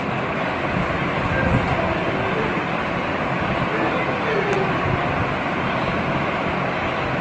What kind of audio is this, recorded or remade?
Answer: recorded